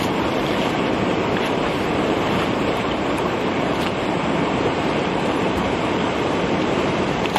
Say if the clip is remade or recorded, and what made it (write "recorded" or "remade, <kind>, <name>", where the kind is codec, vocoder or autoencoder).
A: remade, vocoder, BigVGAN v2